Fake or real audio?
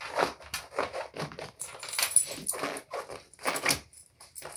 real